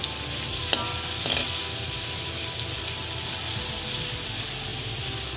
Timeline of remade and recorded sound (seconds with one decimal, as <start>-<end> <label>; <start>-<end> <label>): 0.0-5.4 recorded